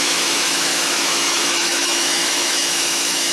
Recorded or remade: remade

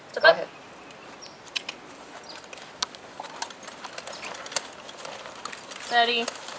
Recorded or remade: recorded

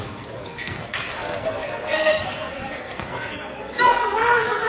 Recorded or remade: remade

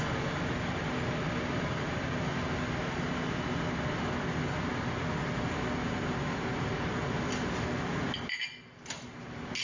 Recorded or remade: recorded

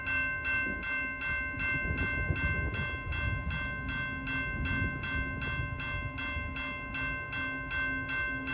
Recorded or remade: recorded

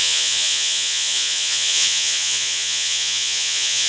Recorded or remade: remade